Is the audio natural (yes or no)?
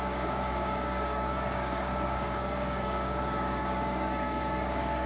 no